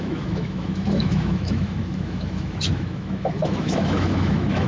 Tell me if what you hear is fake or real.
fake